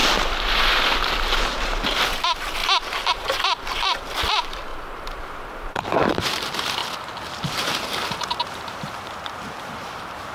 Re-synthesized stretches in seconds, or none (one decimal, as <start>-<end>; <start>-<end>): 0.0-2.6; 3.1-6.8; 7.4-10.3